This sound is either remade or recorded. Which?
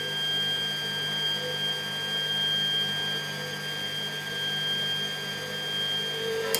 recorded